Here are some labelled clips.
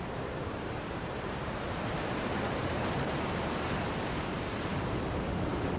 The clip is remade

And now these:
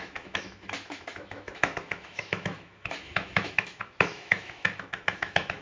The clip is remade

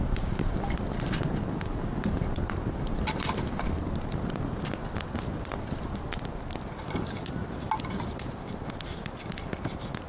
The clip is recorded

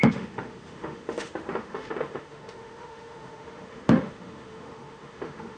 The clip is remade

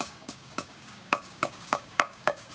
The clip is remade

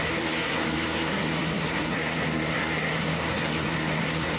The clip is remade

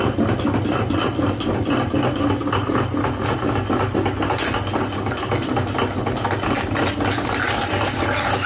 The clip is recorded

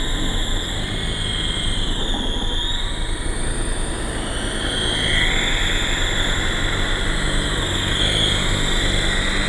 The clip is recorded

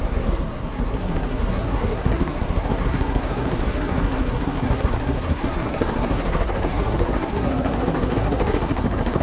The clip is remade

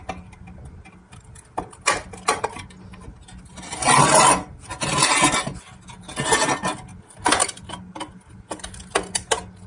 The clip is recorded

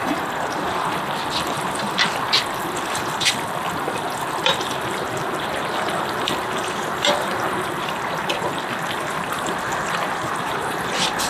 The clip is remade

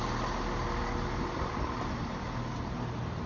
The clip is recorded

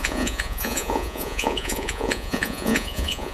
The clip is remade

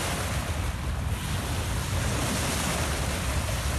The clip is recorded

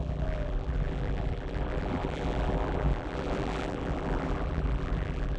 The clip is remade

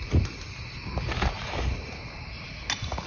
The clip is recorded